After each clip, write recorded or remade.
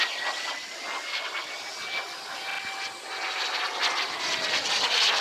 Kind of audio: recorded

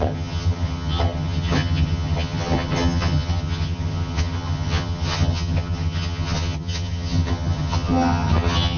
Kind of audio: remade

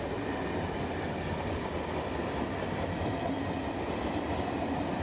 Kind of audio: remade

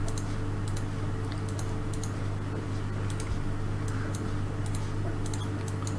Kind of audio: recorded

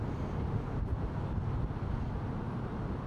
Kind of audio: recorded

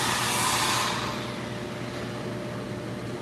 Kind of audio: recorded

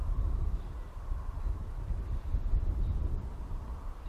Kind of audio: remade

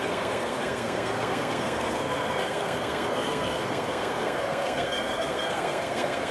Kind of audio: remade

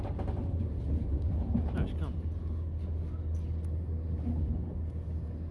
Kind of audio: recorded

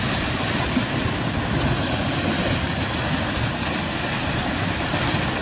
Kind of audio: recorded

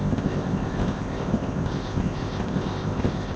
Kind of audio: remade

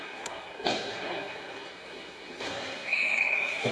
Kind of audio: remade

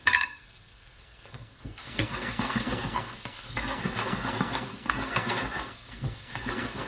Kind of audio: remade